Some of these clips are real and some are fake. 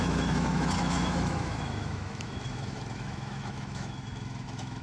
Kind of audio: fake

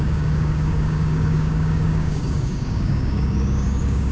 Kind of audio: fake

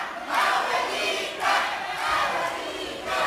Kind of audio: real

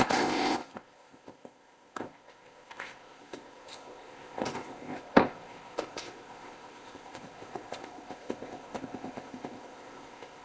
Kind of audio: fake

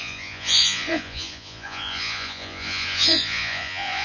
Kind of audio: fake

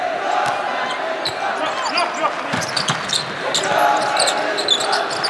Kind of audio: real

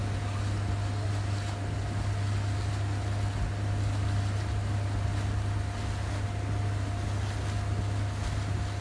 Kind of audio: real